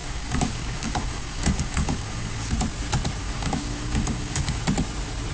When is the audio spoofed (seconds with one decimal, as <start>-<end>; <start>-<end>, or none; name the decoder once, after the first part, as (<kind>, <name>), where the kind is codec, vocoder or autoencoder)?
0.0-2.5 (codec, DAC); 3.2-4.6